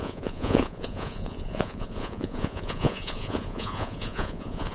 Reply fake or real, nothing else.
fake